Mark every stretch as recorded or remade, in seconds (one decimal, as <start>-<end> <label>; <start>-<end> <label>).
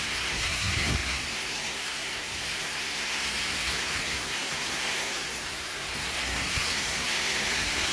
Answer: 0.0-7.9 remade